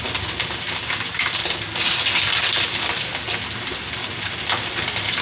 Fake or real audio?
real